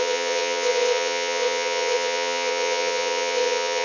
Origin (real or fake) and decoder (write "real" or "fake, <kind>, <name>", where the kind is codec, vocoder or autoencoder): fake, vocoder, WaveNeXt